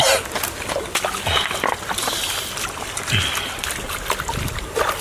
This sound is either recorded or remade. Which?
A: recorded